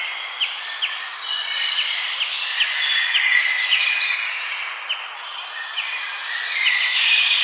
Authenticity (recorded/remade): recorded